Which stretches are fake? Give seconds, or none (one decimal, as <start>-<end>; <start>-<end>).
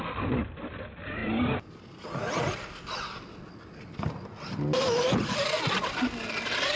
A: none